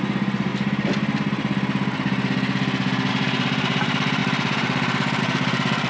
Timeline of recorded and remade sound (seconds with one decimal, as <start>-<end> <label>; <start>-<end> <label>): 0.0-0.5 remade; 0.5-3.1 recorded; 3.1-5.9 remade